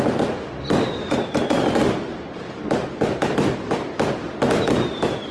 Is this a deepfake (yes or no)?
no